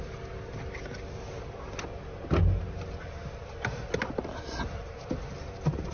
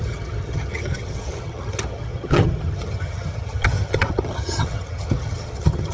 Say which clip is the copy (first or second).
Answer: second